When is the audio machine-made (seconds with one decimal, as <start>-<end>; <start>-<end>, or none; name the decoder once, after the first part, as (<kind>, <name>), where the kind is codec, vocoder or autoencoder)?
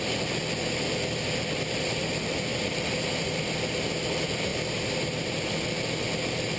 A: 4.5-5.3 (vocoder, BigVGAN v2)